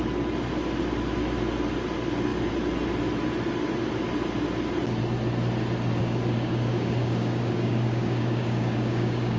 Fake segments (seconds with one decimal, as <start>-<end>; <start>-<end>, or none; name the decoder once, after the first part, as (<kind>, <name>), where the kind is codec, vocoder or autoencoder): 6.0-9.4 (codec, DAC)